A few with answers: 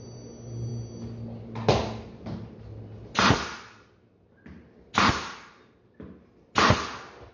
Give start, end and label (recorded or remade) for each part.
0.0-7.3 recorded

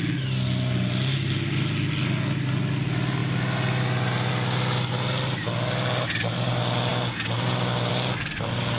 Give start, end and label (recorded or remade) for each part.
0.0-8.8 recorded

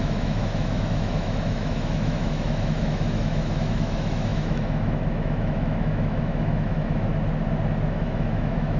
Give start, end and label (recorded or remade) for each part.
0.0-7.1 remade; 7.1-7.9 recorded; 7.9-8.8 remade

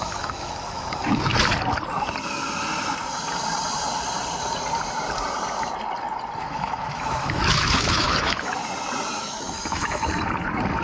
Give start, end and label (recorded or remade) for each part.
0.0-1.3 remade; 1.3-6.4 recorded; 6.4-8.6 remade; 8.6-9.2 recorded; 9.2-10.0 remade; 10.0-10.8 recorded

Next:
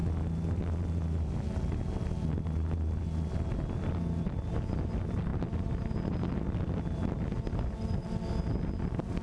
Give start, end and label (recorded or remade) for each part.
0.0-9.2 recorded

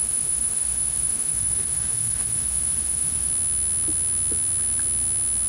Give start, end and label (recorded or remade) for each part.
0.0-3.3 remade; 3.3-5.5 recorded

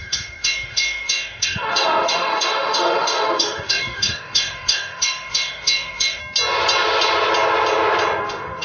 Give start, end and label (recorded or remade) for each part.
0.0-6.2 remade; 6.2-8.2 recorded; 8.2-8.6 remade

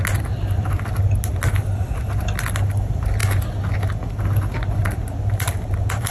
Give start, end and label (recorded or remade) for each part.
0.0-6.1 recorded